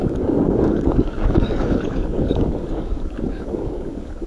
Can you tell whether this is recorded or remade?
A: remade